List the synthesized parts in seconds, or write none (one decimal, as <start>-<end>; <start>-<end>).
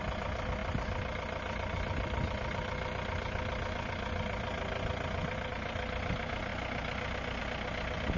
none